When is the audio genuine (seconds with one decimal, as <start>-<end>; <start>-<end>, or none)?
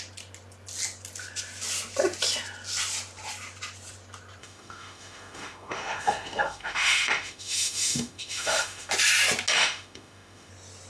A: 0.0-4.4; 8.9-9.5; 10.5-10.9